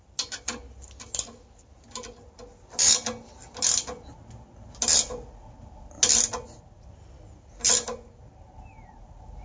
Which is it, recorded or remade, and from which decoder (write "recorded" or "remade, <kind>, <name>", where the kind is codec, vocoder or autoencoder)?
recorded